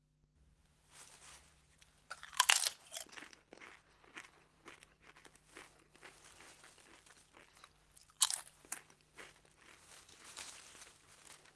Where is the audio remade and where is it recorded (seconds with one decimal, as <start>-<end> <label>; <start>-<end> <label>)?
0.0-0.6 recorded; 0.6-3.3 remade; 3.3-4.5 recorded; 4.5-5.1 remade; 5.1-8.0 recorded; 8.0-11.1 remade; 11.1-11.6 recorded